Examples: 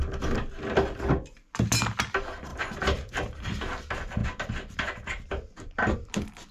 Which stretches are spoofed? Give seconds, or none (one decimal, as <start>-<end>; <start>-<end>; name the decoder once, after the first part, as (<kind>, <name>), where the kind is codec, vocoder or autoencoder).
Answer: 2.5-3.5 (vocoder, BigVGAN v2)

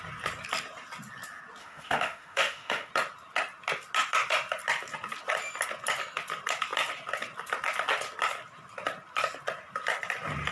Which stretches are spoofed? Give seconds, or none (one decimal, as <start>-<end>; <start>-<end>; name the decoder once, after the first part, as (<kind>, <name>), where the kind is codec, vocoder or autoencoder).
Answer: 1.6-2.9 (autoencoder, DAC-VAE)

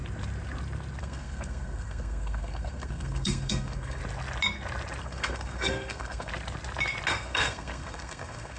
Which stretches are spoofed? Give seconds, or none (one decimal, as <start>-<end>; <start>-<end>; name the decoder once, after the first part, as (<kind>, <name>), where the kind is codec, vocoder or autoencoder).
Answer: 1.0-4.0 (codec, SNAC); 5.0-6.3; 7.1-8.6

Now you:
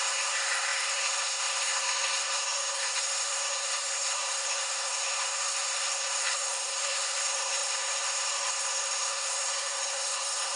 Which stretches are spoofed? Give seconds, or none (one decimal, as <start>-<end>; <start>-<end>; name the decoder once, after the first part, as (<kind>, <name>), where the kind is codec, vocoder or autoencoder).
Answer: 0.0-10.6 (codec, SNAC)